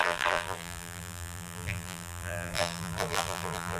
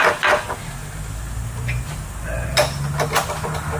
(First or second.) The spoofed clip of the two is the first